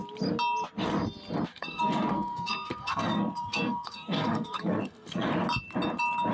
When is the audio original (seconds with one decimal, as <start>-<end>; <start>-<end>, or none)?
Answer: 0.0-1.5; 5.3-6.3